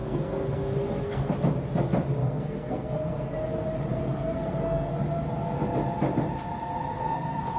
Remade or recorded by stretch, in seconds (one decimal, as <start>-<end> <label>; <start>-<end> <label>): 0.0-1.3 remade; 1.3-2.2 recorded; 2.2-3.3 remade; 3.3-3.9 recorded; 3.9-4.9 remade; 4.9-6.9 recorded; 6.9-7.6 remade